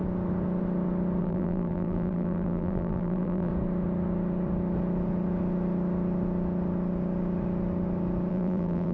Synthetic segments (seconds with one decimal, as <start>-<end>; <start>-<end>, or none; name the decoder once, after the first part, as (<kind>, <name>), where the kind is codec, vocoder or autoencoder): 1.2-3.5 (vocoder, BigVGAN v2); 8.3-8.9